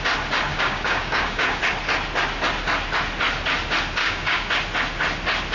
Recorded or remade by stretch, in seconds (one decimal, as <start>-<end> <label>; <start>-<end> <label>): 0.0-0.5 recorded; 0.5-1.6 remade; 1.6-4.0 recorded; 4.0-4.5 remade; 4.5-5.5 recorded